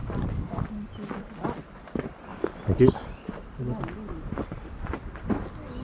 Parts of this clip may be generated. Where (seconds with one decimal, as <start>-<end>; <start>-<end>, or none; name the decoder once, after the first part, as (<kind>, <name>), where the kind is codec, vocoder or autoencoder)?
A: none